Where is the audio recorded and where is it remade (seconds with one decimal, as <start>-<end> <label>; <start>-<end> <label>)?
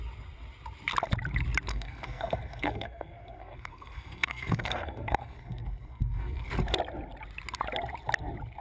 0.0-1.7 recorded; 1.7-6.5 remade; 6.5-8.6 recorded